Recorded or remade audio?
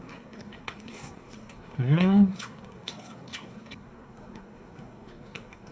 remade